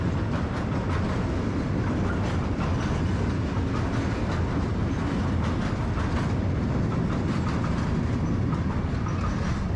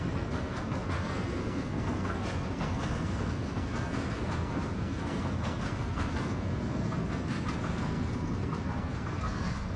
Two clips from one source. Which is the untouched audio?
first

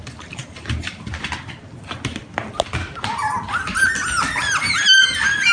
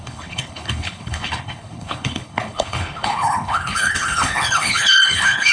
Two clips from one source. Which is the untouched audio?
first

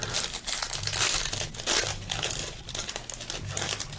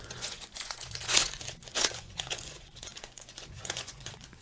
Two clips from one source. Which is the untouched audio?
first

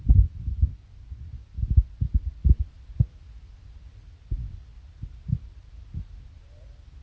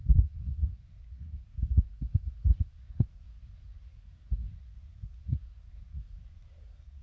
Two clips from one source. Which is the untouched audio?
first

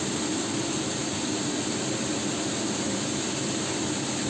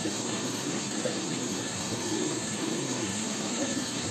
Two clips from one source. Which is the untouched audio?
first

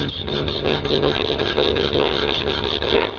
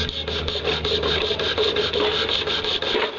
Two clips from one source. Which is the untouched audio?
second